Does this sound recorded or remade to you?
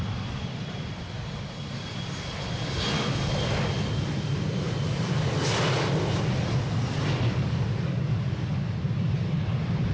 recorded